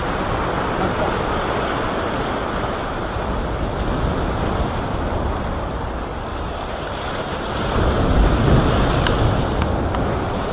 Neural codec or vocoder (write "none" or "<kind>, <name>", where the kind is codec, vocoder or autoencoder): none